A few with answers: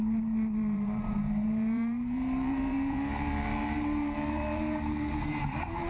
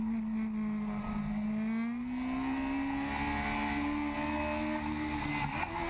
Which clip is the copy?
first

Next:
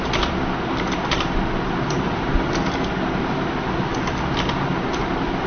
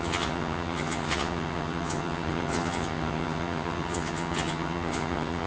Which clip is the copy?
second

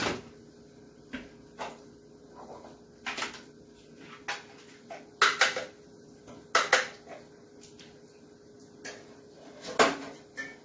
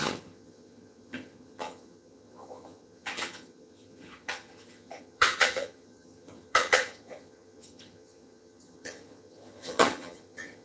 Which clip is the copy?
second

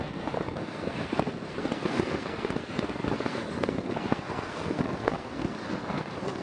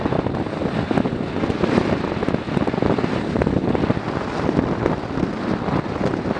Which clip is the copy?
first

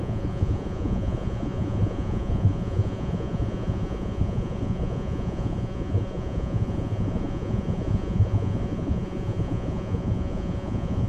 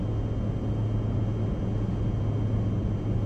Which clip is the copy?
first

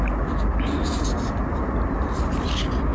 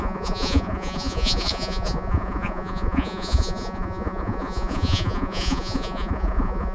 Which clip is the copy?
second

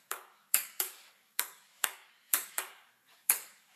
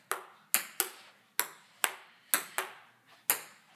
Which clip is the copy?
first